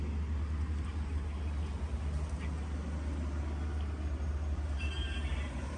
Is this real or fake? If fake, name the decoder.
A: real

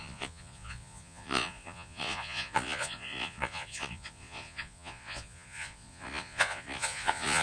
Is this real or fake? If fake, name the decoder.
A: fake, vocoder, Vocos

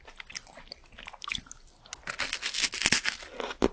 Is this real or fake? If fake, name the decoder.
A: real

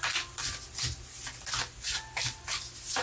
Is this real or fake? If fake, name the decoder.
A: real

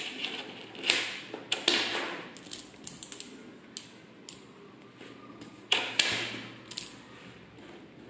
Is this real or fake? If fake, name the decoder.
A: real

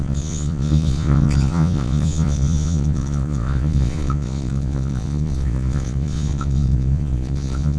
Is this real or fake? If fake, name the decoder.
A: fake, vocoder, Vocos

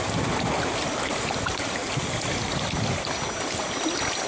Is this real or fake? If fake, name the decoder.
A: real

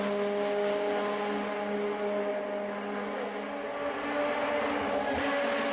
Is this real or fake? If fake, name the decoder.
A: real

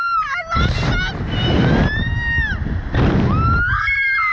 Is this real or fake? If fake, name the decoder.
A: real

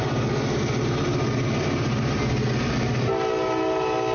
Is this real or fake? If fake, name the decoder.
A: real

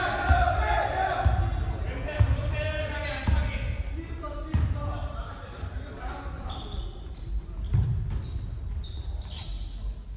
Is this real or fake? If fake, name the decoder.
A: real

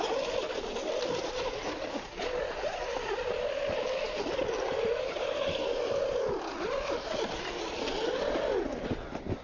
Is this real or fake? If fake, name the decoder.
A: real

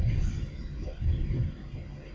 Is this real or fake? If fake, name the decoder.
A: real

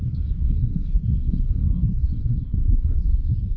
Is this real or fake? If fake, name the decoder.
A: fake, codec, SNAC